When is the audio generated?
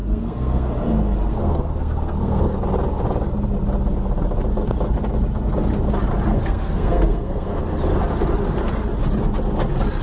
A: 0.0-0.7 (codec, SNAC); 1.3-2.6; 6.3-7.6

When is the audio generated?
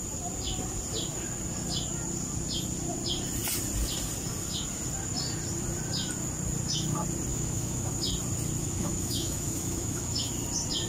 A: 7.3-7.9 (autoencoder, DAC-VAE); 8.6-10.3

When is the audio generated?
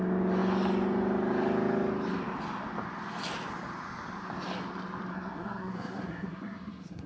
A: 5.1-7.1 (codec, SNAC)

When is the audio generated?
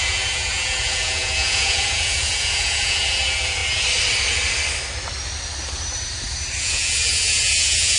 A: 0.0-3.6 (vocoder, Vocos); 6.6-8.0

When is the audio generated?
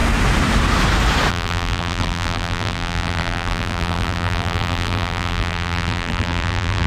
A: 1.3-6.9 (vocoder, BigVGAN v2)